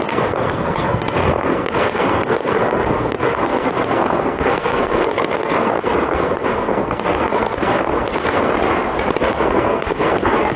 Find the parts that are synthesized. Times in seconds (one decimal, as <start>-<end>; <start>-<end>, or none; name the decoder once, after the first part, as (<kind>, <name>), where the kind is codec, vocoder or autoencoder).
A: 0.0-8.5 (codec, SNAC); 9.2-10.6